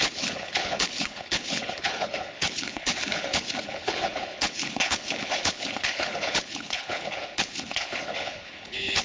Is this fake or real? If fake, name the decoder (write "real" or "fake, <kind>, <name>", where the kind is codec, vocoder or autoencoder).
fake, codec, HILCodec